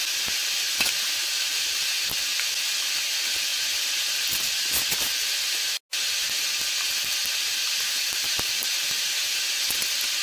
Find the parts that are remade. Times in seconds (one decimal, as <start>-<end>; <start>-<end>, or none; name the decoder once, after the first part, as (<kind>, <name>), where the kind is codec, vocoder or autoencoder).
7.7-9.2 (vocoder, BigVGAN v2)